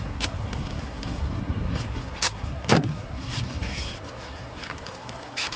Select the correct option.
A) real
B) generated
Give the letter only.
B